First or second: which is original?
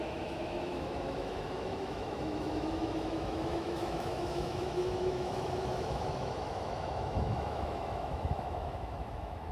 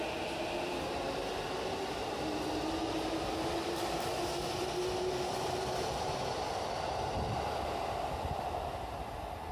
second